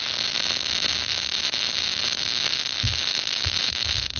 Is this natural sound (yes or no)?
yes